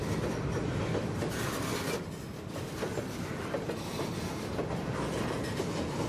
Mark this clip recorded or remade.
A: recorded